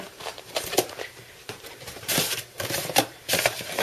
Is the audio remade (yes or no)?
yes